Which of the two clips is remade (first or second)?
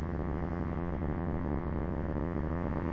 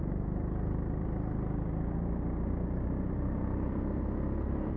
first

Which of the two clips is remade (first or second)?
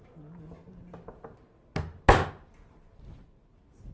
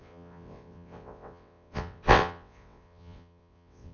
second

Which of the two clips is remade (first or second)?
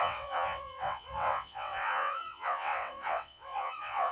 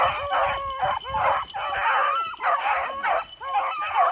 first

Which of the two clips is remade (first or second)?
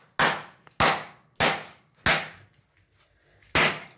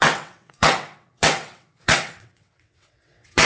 second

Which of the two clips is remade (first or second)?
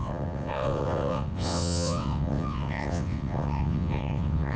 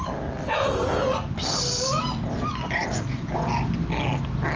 first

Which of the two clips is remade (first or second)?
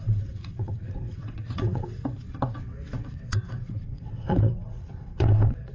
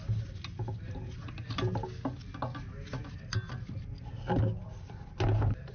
first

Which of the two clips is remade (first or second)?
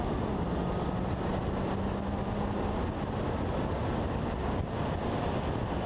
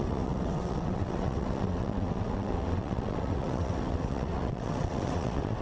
second